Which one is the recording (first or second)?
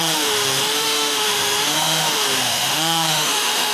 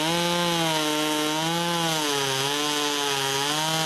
second